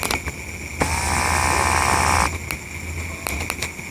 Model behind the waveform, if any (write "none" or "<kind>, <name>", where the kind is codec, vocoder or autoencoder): none